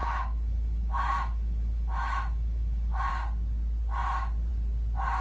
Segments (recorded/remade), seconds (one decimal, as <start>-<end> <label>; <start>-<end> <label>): 0.0-3.1 remade; 3.1-5.2 recorded